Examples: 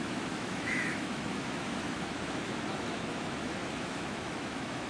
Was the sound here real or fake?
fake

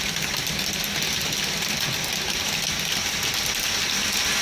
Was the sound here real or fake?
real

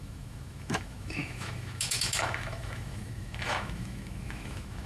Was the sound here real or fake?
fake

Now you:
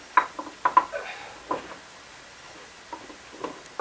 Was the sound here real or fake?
real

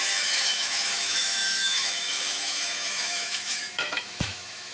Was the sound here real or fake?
fake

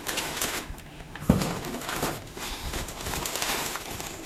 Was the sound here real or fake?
fake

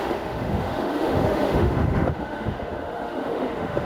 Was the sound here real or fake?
fake